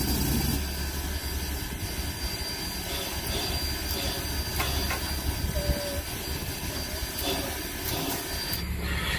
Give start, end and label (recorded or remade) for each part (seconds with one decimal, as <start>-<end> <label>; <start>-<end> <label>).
0.0-9.2 recorded